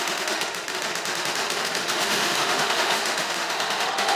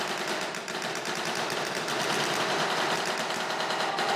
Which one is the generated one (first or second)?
first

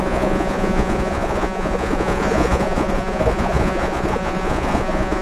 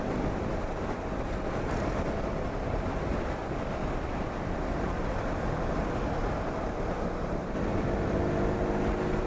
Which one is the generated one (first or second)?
first